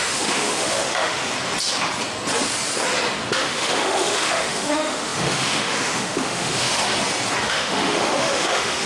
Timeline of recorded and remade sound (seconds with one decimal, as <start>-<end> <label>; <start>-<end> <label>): 0.0-1.2 remade; 1.2-3.3 recorded; 3.3-6.8 remade; 6.8-7.4 recorded; 7.4-8.9 remade